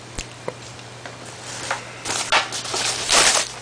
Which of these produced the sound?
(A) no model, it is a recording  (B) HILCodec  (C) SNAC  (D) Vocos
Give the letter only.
A